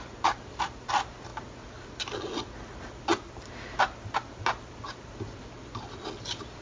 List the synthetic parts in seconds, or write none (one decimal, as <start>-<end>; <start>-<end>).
none